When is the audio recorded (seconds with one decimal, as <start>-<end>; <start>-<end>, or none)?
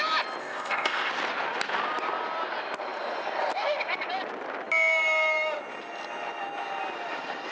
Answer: 0.0-0.4; 1.1-7.5